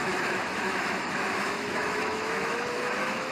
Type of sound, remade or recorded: remade